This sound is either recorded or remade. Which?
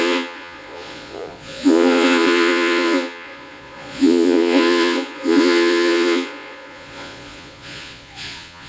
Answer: remade